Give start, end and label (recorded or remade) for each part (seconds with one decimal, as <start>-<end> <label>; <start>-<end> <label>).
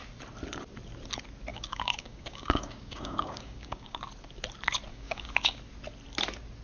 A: 0.0-1.5 recorded; 1.5-4.0 remade; 4.0-4.9 recorded; 4.9-5.6 remade; 5.6-6.6 recorded